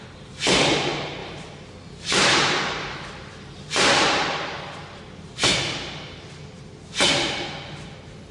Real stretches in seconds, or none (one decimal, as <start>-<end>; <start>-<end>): 0.0-1.2; 5.0-8.3